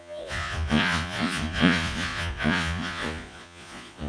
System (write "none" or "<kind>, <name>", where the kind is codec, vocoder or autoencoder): vocoder, Vocos